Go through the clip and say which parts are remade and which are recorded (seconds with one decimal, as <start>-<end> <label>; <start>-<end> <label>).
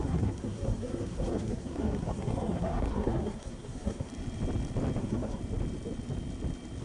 0.0-4.1 remade; 4.1-5.0 recorded; 5.0-5.4 remade; 5.4-6.8 recorded